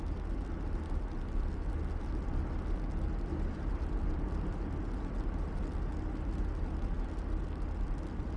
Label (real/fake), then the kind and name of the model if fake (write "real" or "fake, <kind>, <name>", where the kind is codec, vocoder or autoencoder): real